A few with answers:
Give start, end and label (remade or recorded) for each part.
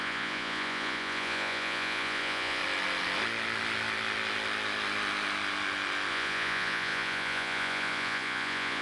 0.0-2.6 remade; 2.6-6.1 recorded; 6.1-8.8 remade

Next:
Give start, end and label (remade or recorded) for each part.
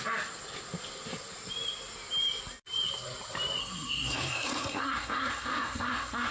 0.0-3.6 recorded; 3.6-6.3 remade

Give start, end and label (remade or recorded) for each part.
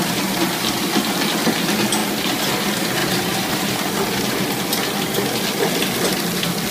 0.0-3.0 recorded; 3.0-3.9 remade; 3.9-6.7 recorded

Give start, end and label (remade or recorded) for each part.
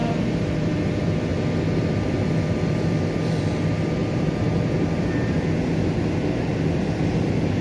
0.0-0.7 remade; 0.7-4.0 recorded; 4.0-5.1 remade; 5.1-7.6 recorded